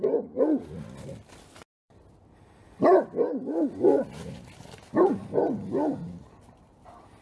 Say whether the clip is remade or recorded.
recorded